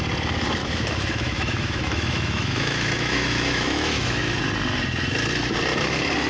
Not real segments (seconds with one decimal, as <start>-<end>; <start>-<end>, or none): 0.6-4.4